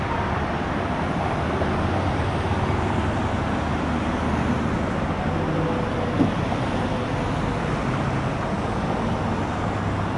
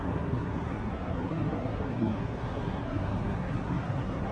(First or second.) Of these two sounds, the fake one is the second